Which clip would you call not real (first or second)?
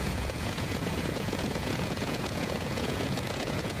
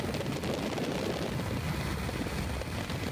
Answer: first